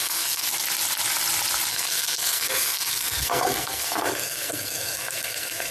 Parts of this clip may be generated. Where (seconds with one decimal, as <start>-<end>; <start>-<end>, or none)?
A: 0.0-0.5; 1.7-5.7